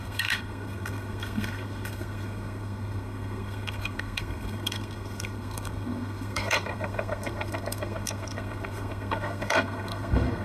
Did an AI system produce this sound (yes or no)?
yes